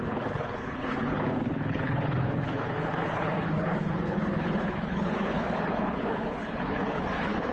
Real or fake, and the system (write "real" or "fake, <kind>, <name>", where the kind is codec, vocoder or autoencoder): fake, codec, HILCodec